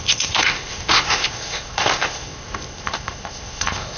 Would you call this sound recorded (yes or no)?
no